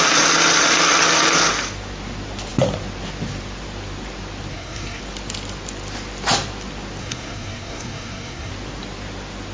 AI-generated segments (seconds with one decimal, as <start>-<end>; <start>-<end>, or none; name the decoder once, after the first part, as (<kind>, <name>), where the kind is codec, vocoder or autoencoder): 4.5-5.0 (codec, SNAC); 7.0-8.5